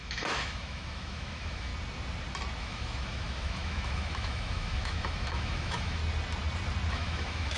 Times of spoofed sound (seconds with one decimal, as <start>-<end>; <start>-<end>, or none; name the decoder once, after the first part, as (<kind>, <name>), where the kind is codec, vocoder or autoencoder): 0.0-1.7 (autoencoder, DAC-VAE); 2.6-6.0; 6.9-7.6